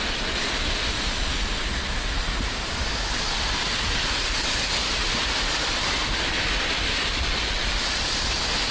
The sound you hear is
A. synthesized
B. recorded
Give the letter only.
B